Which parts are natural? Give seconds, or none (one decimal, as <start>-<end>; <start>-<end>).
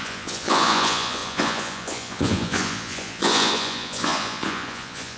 none